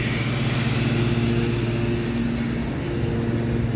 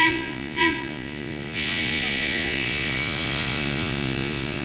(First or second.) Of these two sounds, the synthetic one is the second